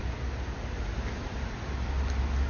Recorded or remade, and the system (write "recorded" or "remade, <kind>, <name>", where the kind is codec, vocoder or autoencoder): recorded